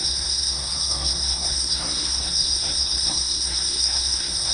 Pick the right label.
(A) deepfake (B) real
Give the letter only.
A